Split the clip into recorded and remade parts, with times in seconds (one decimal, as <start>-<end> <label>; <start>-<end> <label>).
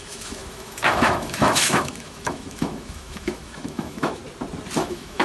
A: 0.0-4.2 remade; 4.2-4.8 recorded; 4.8-5.2 remade